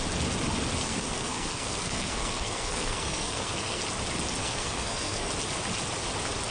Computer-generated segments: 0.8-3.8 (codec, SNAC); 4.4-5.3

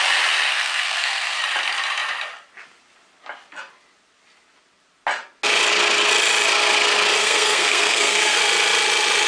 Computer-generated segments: 0.5-1.4 (codec, SNAC); 7.2-8.4

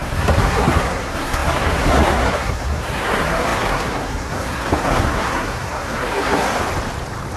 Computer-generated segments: 0.0-6.6 (codec, SNAC)

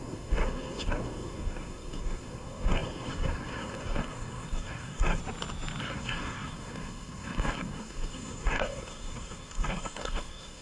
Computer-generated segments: 0.0-5.2 (codec, SNAC); 5.8-10.6

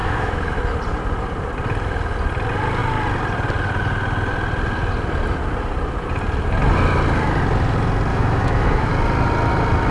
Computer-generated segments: 0.0-0.6 (autoencoder, DAC-VAE); 8.1-8.9

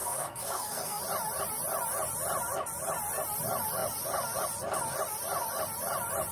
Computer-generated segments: 0.0-1.0 (codec, SNAC)